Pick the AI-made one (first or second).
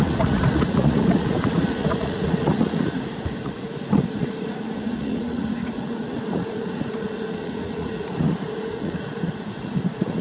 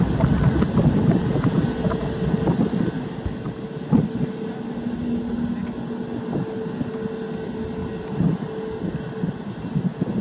first